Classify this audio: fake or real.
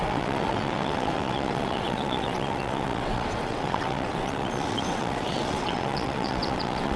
fake